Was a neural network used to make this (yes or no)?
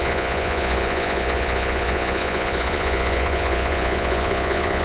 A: yes